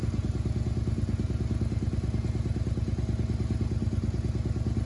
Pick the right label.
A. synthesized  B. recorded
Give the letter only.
B